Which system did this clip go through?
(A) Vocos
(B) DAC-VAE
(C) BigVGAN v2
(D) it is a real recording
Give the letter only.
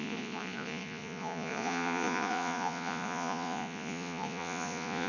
A